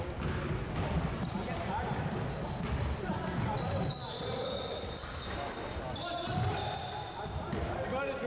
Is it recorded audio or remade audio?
recorded